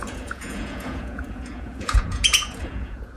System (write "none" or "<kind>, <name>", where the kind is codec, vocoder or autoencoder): vocoder, Vocos